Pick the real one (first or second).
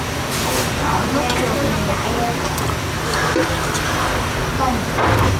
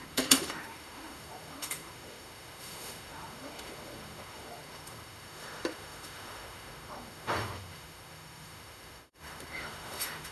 first